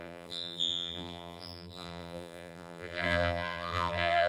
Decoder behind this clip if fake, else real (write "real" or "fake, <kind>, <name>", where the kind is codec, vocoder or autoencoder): fake, vocoder, BigVGAN v2